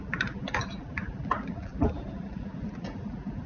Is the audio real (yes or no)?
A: no